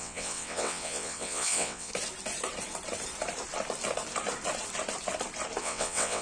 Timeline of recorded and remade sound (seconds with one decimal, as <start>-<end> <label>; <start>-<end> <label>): 0.0-1.9 remade; 1.9-5.6 recorded; 5.6-6.2 remade